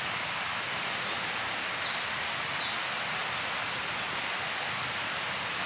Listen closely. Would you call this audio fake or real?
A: real